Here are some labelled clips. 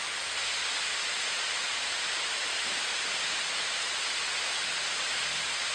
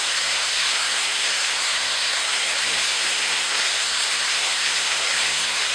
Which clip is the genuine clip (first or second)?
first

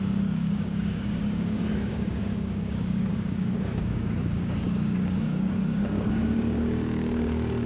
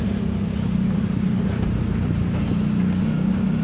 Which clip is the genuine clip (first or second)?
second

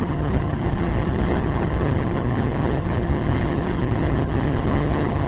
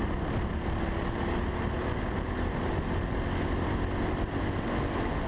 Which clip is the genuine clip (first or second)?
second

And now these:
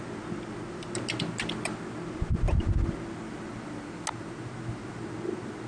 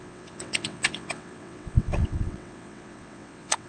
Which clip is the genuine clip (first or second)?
first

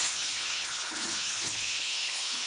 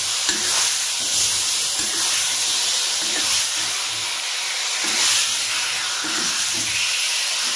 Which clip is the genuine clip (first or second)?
second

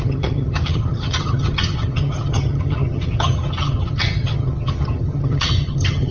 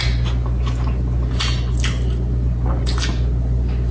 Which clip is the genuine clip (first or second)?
second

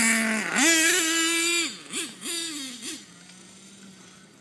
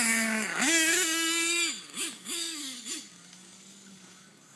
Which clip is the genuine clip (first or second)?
first